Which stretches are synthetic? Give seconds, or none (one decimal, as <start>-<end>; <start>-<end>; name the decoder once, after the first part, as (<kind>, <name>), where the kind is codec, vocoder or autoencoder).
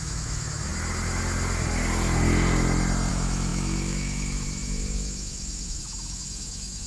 0.0-0.7 (autoencoder, DAC-VAE); 3.1-6.9